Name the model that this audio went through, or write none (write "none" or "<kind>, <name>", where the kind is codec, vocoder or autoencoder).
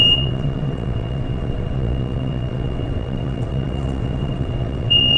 vocoder, WaveNeXt